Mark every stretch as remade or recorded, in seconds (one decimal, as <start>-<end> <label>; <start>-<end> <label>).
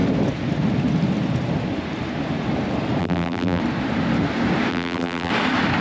0.0-3.0 recorded; 3.0-3.6 remade; 3.6-4.7 recorded; 4.7-5.3 remade; 5.3-5.8 recorded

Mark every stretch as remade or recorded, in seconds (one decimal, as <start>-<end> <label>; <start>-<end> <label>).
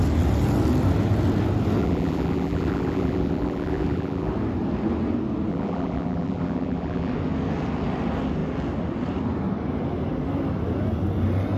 0.0-1.8 recorded; 1.8-4.3 remade; 4.3-5.5 recorded; 5.5-7.1 remade; 7.1-11.6 recorded